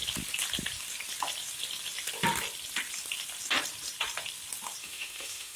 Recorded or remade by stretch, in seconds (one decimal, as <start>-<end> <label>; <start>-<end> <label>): 0.0-4.8 recorded; 4.8-5.6 remade

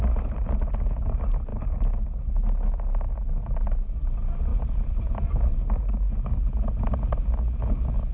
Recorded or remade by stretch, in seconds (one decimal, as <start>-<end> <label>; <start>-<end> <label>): 0.0-4.5 recorded; 4.5-5.9 remade; 5.9-8.1 recorded

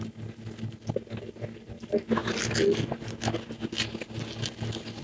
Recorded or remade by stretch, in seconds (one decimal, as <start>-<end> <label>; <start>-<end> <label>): 0.0-5.0 recorded

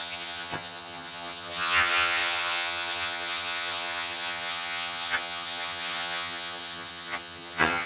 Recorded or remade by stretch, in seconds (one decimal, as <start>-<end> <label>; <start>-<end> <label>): 0.0-7.9 remade

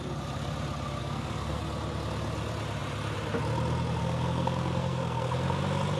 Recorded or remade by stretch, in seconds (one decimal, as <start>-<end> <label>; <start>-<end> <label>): 0.0-1.0 recorded; 1.0-1.6 remade; 1.6-4.0 recorded; 4.0-5.6 remade; 5.6-6.0 recorded

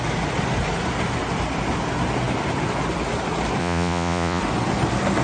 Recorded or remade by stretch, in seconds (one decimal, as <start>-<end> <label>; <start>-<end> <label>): 0.0-3.6 recorded; 3.6-4.4 remade; 4.4-5.2 recorded

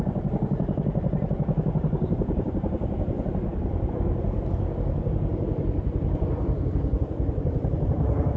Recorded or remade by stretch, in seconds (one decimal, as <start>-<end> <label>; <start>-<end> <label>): 0.0-8.4 recorded